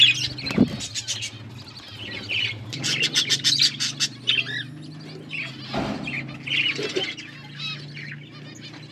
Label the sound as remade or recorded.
recorded